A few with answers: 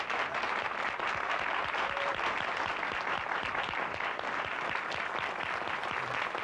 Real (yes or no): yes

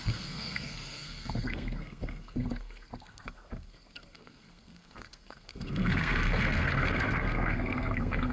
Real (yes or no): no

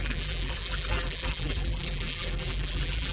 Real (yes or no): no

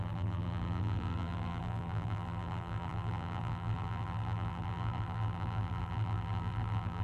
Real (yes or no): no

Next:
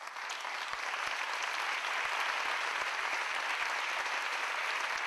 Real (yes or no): yes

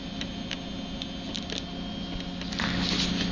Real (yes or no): yes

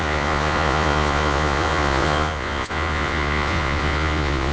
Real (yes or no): no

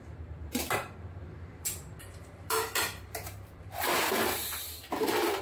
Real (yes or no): no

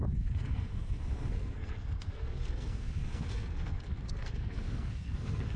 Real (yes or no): no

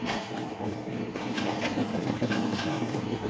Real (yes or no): no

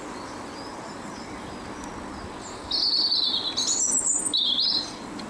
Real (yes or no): yes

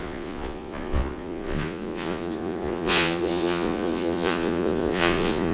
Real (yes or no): no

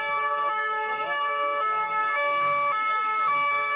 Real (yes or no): no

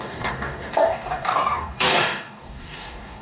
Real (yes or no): no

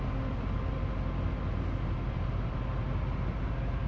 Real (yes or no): yes